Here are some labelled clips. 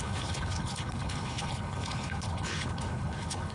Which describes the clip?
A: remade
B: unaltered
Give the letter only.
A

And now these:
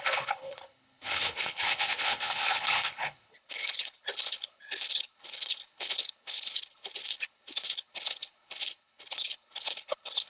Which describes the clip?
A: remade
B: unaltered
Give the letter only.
A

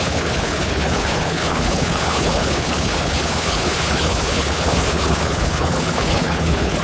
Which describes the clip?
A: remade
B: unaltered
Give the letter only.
A